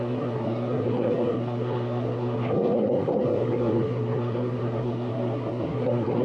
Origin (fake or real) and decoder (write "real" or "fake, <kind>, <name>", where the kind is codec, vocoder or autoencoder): fake, codec, SNAC